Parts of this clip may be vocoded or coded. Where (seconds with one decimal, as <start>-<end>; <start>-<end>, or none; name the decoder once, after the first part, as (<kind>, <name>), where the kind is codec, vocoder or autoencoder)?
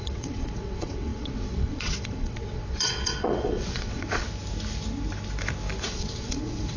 0.0-4.2 (vocoder, WaveNeXt); 5.8-6.8